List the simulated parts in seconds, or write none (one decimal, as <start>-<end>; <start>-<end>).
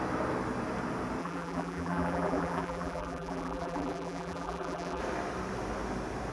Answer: 1.2-5.0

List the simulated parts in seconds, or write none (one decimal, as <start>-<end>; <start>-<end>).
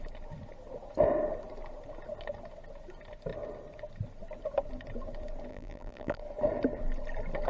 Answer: 5.5-6.2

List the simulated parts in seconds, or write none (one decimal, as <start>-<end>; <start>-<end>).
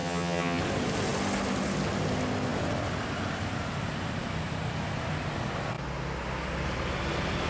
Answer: 0.0-0.6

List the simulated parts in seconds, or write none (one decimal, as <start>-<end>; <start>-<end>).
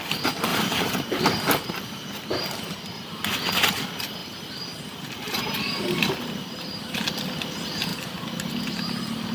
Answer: 0.5-1.2; 7.9-8.5